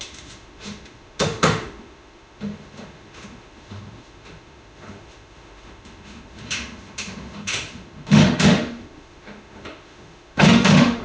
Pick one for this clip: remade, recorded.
remade